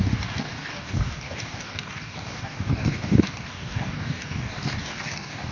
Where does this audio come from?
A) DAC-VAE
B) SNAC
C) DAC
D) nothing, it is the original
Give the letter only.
C